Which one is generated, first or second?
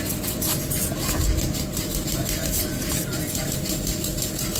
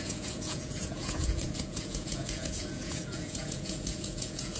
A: second